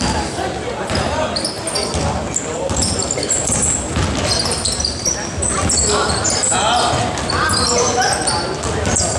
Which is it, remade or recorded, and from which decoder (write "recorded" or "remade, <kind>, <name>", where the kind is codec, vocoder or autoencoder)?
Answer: recorded